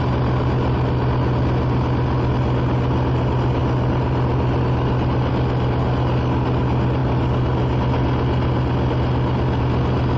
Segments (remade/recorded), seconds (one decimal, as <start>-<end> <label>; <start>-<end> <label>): 0.0-10.2 recorded